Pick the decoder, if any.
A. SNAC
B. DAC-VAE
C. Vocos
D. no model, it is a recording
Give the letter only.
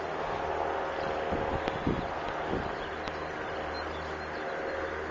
D